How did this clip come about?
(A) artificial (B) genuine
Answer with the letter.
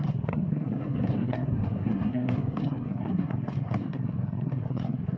A